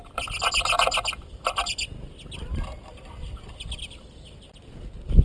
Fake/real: real